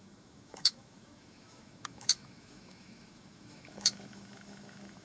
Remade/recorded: remade